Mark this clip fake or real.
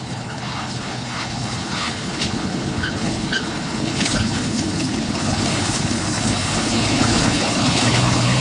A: fake